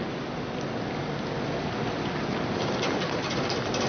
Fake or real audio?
real